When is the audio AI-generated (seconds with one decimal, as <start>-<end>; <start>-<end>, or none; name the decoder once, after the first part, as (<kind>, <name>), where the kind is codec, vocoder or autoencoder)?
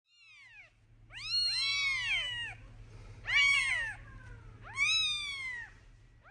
none